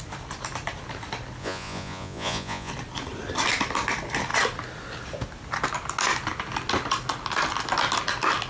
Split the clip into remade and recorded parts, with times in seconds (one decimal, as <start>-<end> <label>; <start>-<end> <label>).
0.0-1.4 recorded; 1.4-2.7 remade; 2.7-8.5 recorded